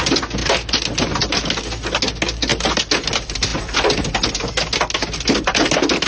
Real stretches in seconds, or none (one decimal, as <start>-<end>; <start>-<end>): 0.0-6.1